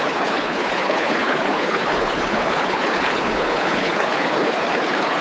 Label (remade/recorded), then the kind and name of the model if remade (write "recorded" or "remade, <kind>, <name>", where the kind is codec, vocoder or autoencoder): remade, codec, HILCodec